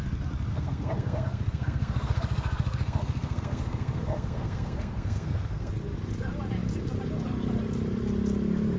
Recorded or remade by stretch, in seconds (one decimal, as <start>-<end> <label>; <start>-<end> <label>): 0.0-0.5 recorded; 0.5-5.7 remade; 5.7-8.8 recorded

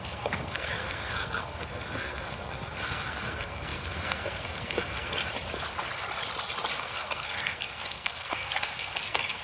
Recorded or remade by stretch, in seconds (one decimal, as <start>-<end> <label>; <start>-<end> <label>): 0.0-5.2 remade; 5.2-6.8 recorded; 6.8-9.4 remade

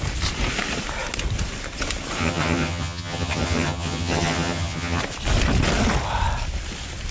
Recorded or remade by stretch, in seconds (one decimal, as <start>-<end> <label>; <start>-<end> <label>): 0.0-2.2 recorded; 2.2-5.0 remade; 5.0-7.1 recorded

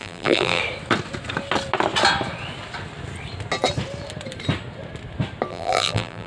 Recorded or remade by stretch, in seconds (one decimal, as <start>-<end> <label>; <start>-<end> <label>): 0.0-0.6 remade; 0.6-5.5 recorded; 5.5-6.3 remade

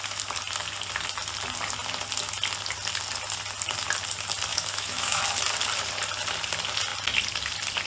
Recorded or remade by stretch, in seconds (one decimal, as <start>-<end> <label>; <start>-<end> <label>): 0.0-4.5 recorded; 4.5-5.2 remade; 5.2-7.9 recorded

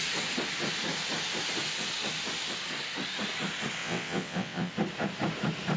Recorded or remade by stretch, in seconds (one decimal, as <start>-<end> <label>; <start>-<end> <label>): 0.0-3.8 recorded; 3.8-4.7 remade; 4.7-5.8 recorded

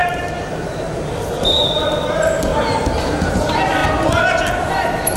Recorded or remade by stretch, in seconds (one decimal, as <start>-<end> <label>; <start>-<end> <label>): 0.0-2.5 remade; 2.5-3.3 recorded; 3.3-3.8 remade; 3.8-4.4 recorded; 4.4-5.2 remade